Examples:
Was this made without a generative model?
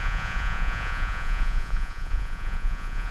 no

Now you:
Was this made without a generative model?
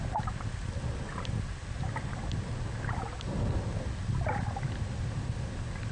yes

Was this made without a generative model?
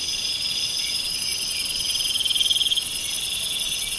yes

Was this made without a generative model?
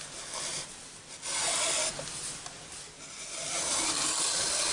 yes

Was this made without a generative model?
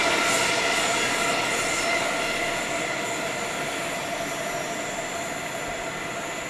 yes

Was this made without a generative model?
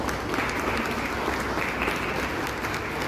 yes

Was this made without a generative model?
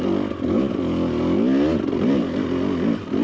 yes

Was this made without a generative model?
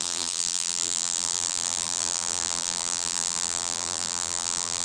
no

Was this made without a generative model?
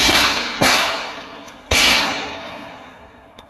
no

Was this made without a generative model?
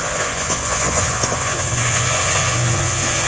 no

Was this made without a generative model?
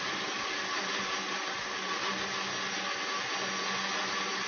yes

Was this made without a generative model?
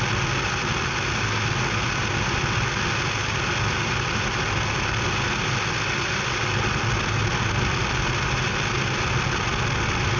yes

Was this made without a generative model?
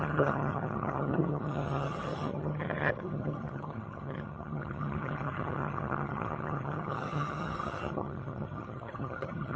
no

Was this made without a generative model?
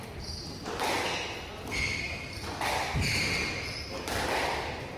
yes